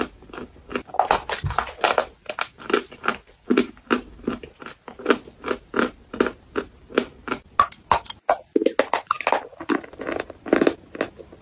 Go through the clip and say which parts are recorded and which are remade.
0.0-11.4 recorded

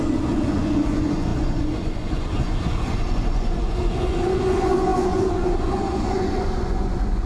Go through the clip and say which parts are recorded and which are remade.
0.0-7.3 remade